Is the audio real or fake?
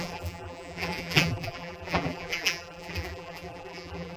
fake